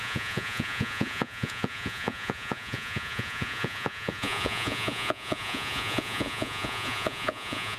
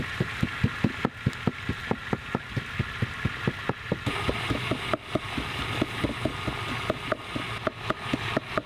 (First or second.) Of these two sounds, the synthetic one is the first